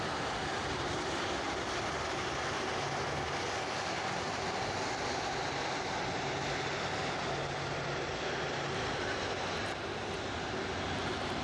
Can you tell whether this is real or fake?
real